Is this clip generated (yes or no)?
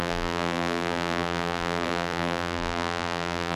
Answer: yes